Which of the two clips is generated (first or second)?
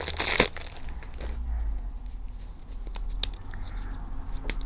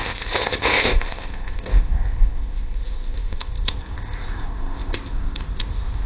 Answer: second